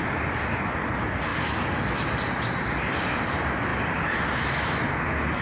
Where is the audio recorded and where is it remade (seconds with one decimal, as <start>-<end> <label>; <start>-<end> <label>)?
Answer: 0.0-5.4 recorded